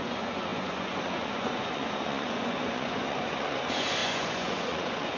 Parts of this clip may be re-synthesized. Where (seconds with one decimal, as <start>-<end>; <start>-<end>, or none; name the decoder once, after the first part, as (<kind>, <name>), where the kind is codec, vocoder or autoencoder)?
0.0-5.2 (vocoder, Vocos)